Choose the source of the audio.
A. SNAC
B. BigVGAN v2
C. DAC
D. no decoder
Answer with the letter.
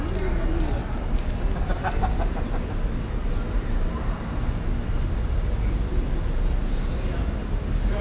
D